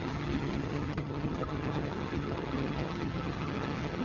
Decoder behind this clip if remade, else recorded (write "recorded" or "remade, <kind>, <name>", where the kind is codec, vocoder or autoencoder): remade, vocoder, HiFi-GAN